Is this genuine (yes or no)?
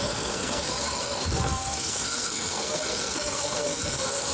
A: no